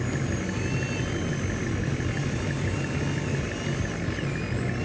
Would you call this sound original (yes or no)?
yes